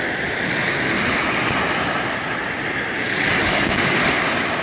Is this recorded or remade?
recorded